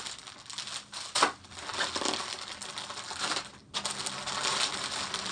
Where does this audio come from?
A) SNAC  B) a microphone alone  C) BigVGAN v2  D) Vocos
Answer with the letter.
B